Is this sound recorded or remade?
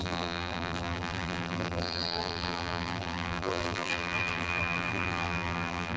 remade